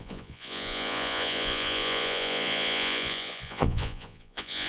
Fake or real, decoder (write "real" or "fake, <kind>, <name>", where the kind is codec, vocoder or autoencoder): fake, vocoder, Vocos